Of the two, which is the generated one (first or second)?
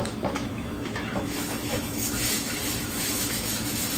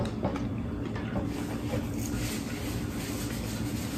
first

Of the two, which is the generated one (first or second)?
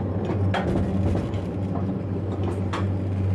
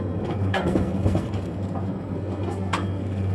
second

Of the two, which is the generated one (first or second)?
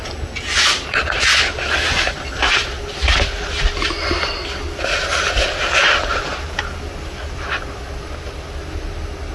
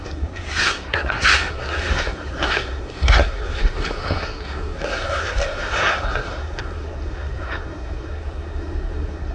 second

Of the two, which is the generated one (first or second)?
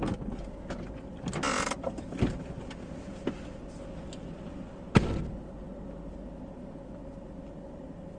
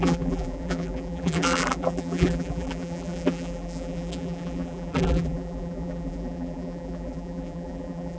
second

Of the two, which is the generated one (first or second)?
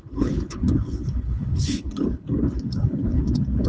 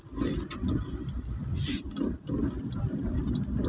first